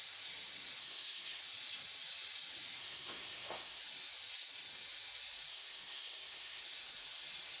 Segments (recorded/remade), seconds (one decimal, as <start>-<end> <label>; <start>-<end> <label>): 0.0-0.8 recorded; 0.8-1.4 remade; 1.4-2.8 recorded; 2.8-3.8 remade; 3.8-5.5 recorded; 5.5-6.6 remade; 6.6-7.6 recorded